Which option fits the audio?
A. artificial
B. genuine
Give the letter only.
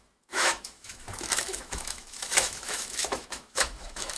A